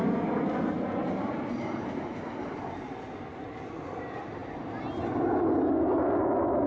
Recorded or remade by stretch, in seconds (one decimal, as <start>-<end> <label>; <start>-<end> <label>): 0.0-1.0 recorded; 1.0-4.0 remade; 4.0-6.7 recorded